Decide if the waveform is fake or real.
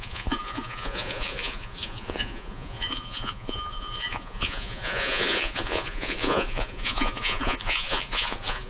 fake